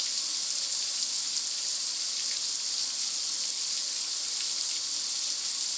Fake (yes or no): no